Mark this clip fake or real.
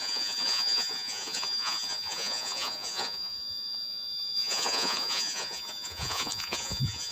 fake